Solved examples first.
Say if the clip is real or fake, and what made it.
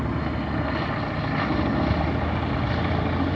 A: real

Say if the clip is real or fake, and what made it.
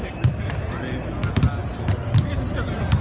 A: real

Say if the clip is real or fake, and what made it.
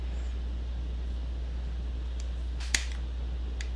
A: real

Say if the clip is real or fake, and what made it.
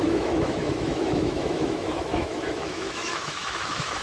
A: fake, autoencoder, DAC-VAE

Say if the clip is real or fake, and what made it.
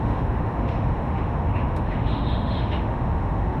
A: fake, autoencoder, DAC-VAE